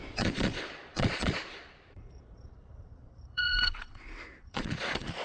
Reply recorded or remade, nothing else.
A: remade